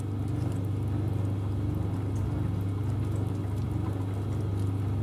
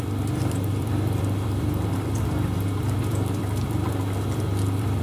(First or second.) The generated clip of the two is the second